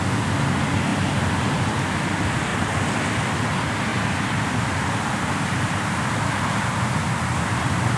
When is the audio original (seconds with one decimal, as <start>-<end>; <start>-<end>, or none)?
0.0-0.9; 1.7-2.5; 3.0-3.9; 7.4-8.0